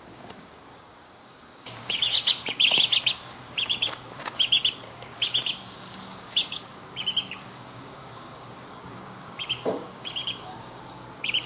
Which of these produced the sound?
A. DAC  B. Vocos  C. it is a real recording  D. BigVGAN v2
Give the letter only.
A